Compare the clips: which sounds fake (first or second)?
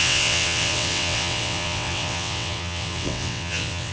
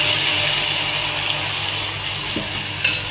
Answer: first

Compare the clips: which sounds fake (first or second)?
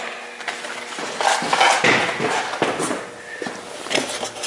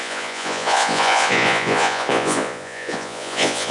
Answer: second